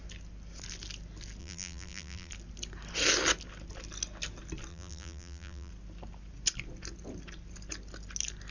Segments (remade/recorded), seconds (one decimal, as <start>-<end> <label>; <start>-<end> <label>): 0.0-1.4 recorded; 1.4-2.3 remade; 2.3-4.7 recorded; 4.7-5.7 remade; 5.7-8.5 recorded